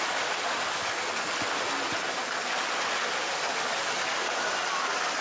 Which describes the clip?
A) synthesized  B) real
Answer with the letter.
B